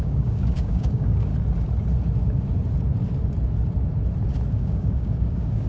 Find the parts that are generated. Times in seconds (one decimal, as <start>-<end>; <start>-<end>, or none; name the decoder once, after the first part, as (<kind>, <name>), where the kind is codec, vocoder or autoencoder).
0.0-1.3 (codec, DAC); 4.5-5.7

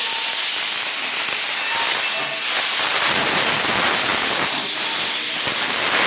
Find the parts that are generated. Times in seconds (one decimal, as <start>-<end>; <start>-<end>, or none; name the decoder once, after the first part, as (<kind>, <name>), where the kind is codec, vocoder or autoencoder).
none

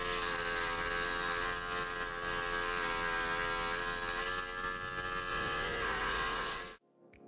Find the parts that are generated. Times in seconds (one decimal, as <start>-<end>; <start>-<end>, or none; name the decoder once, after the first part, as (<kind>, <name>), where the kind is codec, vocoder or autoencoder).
5.3-6.6 (vocoder, Vocos)

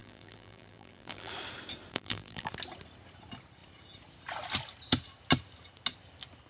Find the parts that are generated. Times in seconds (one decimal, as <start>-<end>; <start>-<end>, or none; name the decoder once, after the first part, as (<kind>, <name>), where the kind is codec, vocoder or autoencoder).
0.0-1.3 (vocoder, BigVGAN v2); 1.9-2.5